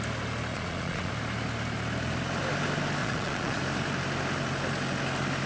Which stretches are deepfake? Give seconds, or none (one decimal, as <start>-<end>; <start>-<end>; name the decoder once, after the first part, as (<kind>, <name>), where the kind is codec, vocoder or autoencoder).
0.5-1.1 (vocoder, Vocos); 3.0-3.6